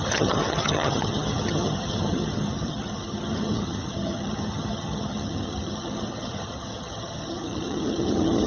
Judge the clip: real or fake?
fake